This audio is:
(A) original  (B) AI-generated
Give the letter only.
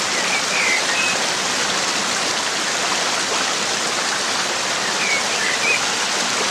A